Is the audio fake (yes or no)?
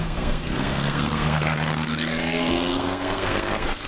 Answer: yes